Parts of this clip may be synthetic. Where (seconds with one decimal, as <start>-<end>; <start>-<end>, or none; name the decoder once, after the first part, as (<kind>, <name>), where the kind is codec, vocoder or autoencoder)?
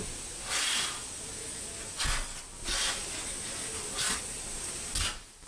none